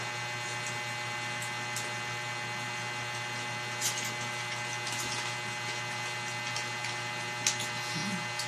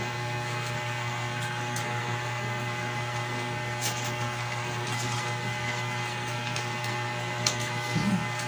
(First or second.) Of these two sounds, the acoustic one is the first